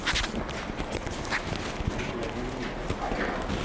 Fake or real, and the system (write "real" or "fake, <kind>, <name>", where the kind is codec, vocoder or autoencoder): real